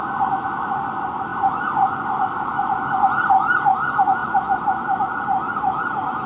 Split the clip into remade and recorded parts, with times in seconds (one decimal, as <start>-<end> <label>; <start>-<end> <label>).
0.0-6.3 recorded